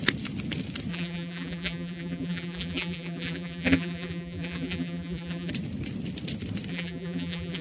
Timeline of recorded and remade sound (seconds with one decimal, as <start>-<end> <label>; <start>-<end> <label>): 0.0-0.9 recorded; 0.9-5.5 remade; 5.5-6.7 recorded; 6.7-7.6 remade